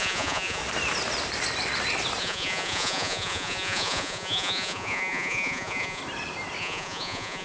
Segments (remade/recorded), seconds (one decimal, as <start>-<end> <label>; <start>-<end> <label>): 0.0-0.6 remade; 0.6-2.2 recorded; 2.2-6.0 remade; 6.0-6.6 recorded; 6.6-7.4 remade